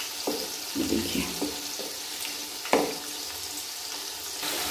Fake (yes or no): yes